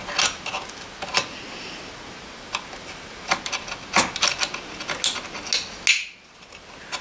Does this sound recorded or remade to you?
recorded